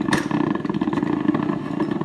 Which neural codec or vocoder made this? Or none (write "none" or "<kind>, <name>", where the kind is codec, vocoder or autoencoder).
none